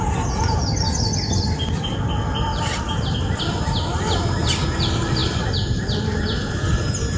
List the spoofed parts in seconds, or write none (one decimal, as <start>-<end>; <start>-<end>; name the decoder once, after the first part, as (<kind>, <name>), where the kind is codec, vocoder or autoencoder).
2.5-3.4 (vocoder, BigVGAN v2)